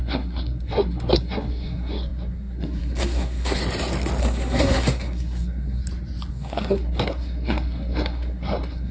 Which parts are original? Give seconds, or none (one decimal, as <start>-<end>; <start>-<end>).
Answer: 3.6-4.2; 5.8-6.3